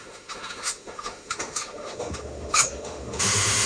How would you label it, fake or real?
fake